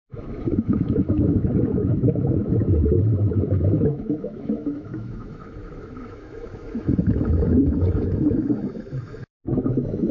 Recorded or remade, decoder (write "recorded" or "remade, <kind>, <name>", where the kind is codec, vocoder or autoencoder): remade, autoencoder, DAC-VAE